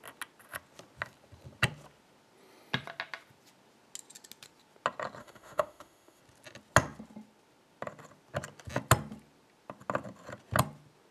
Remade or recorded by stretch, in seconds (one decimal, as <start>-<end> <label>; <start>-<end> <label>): 0.0-5.2 recorded; 5.2-6.2 remade; 6.2-11.1 recorded